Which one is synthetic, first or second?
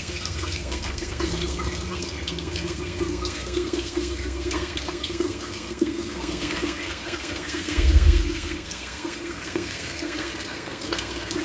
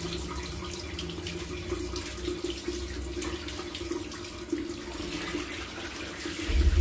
first